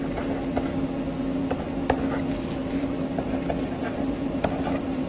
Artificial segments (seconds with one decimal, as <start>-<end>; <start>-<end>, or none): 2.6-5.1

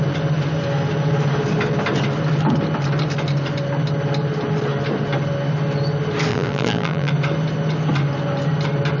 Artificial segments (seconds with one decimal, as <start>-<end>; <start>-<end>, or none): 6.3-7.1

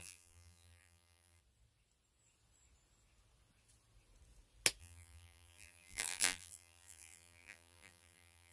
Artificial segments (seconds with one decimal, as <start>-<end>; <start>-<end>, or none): 0.0-1.4; 4.8-8.5